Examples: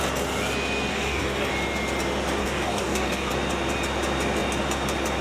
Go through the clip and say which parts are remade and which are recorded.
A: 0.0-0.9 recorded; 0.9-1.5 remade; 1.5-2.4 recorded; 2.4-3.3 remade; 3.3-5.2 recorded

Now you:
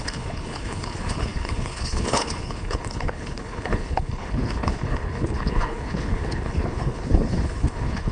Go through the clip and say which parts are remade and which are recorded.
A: 0.0-8.1 remade